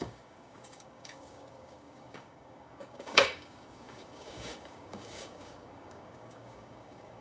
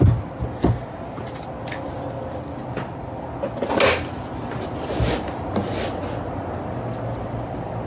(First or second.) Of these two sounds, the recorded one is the second